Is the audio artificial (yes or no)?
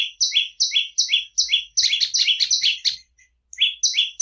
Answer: no